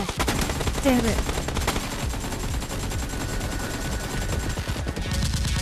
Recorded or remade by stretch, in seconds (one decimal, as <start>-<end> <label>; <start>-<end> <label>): 0.0-3.3 recorded; 3.3-4.1 remade; 4.1-5.6 recorded